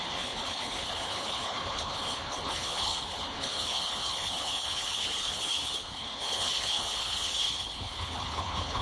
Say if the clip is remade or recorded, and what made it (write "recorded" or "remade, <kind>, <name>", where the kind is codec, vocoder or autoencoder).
remade, codec, HILCodec